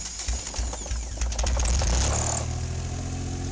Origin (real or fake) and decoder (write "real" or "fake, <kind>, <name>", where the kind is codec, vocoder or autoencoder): real